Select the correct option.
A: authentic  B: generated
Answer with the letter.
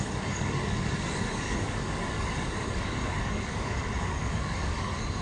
B